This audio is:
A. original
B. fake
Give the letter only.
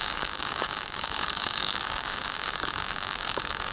B